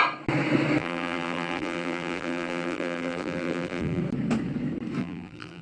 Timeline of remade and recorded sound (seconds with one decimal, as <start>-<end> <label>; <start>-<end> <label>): 0.0-0.8 recorded; 0.8-4.0 remade; 4.0-5.0 recorded; 5.0-5.6 remade